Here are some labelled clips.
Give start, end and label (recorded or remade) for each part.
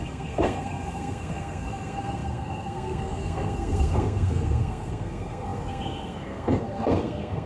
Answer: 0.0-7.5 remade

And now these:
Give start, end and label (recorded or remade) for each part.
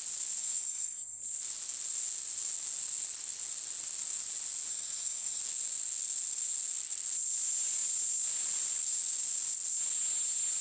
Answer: 0.0-0.4 recorded; 0.4-1.2 remade; 1.2-4.7 recorded; 4.7-5.4 remade; 5.4-10.6 recorded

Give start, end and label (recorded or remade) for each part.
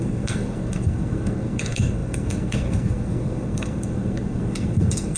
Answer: 0.0-5.2 remade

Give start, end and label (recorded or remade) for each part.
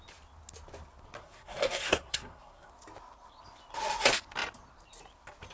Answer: 0.0-1.2 recorded; 1.2-2.7 remade; 2.7-5.5 recorded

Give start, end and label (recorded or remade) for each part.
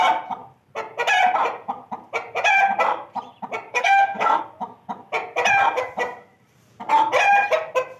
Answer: 0.0-3.7 recorded; 3.7-4.4 remade; 4.4-8.0 recorded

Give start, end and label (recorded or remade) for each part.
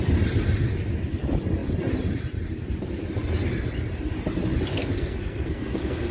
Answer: 0.0-4.7 recorded; 4.7-6.1 remade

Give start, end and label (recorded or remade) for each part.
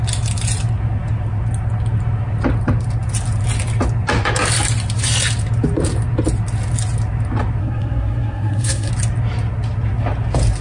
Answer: 0.0-7.6 recorded; 7.6-8.9 remade; 8.9-10.6 recorded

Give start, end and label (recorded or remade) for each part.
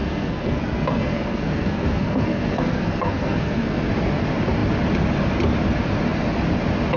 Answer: 0.0-3.9 remade; 3.9-7.0 recorded